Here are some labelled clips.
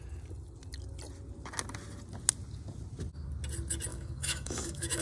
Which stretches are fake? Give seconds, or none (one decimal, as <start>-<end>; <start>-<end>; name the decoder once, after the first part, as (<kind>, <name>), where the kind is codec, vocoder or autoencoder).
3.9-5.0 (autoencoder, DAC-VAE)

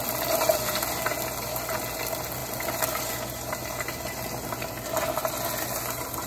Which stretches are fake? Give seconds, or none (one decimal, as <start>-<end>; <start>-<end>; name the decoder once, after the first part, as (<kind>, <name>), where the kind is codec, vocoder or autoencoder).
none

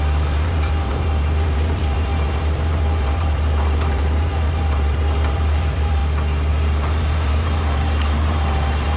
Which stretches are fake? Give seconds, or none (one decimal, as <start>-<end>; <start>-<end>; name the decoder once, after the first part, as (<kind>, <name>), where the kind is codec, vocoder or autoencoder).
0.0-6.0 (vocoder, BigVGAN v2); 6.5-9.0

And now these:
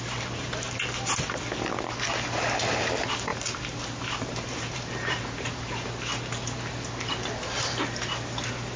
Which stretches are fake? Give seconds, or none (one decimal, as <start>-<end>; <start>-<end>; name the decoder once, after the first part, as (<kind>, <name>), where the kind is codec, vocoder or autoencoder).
3.3-4.9 (vocoder, BigVGAN v2)